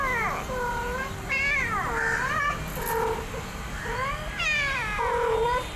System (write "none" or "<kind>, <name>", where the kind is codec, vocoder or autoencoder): none